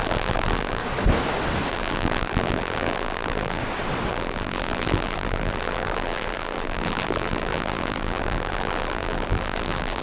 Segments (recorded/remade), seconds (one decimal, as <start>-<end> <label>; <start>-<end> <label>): 0.0-0.8 remade; 0.8-1.7 recorded; 1.7-3.6 remade; 3.6-4.1 recorded; 4.1-10.0 remade